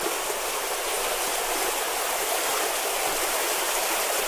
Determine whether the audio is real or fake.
real